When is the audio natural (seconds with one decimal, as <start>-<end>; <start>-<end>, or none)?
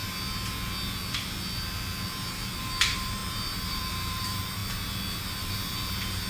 0.0-2.6; 4.6-5.4